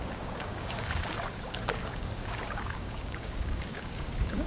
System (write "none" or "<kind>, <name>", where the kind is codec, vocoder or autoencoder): codec, DAC